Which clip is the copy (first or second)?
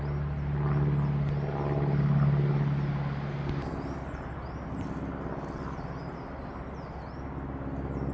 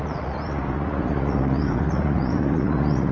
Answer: second